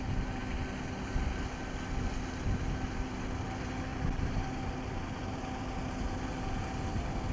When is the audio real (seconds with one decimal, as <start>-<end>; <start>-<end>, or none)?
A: 0.0-3.9; 6.1-7.3